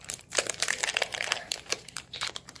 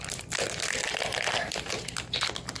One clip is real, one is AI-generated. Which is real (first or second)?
second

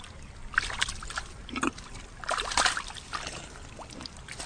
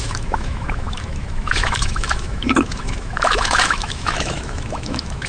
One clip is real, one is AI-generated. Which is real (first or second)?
first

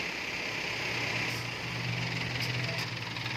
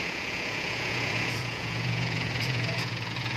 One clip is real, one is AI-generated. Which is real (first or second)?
first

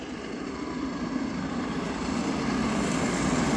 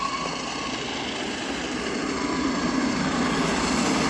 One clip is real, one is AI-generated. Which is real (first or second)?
second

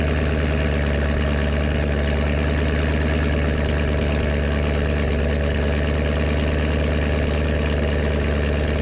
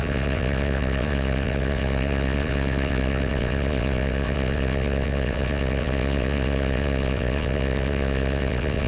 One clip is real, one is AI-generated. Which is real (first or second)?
first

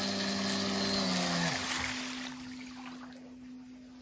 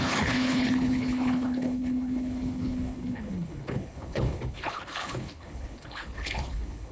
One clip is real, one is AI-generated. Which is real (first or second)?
first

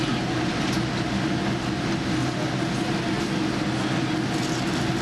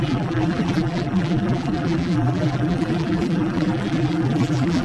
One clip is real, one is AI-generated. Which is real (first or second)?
first